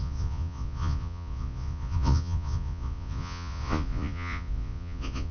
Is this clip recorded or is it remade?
remade